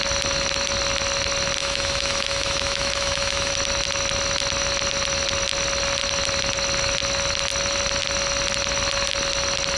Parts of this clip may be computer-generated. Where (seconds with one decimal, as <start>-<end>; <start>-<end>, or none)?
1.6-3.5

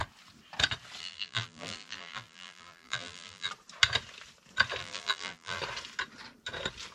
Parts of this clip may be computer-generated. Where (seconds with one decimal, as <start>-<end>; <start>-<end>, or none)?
1.0-3.5; 4.8-5.6

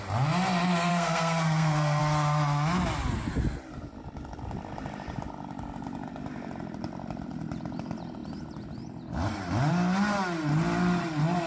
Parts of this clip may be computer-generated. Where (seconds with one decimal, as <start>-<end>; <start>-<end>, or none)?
0.9-2.0

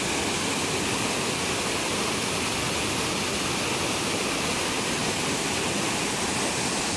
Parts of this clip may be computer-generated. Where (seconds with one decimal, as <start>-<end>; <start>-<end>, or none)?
5.0-5.6